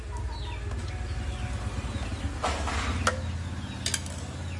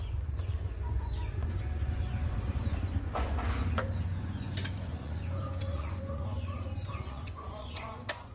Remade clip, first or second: second